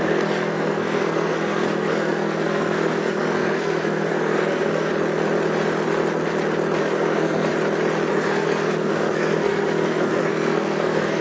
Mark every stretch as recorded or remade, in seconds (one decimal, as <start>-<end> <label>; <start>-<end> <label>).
0.0-4.9 remade; 4.9-6.8 recorded; 6.8-7.5 remade; 7.5-8.1 recorded; 8.1-11.2 remade